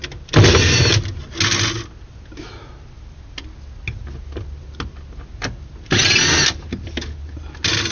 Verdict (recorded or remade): recorded